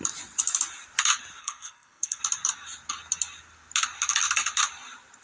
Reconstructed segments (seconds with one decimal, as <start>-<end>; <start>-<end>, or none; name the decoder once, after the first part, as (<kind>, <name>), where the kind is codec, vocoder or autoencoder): 1.4-2.2 (codec, SNAC)